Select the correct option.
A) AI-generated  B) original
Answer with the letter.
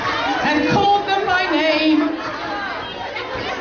B